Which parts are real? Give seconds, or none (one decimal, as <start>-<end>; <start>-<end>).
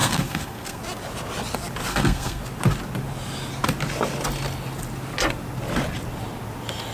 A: 0.8-1.9; 2.4-6.9